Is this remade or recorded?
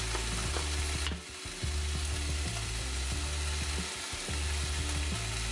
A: recorded